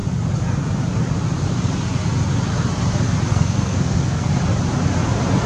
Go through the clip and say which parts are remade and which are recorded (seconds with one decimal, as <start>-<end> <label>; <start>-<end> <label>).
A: 0.0-3.3 recorded; 3.3-4.3 remade; 4.3-5.5 recorded